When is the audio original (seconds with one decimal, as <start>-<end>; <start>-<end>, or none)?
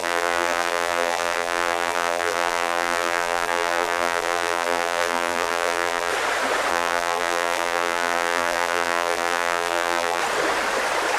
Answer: 6.1-6.7; 10.2-11.2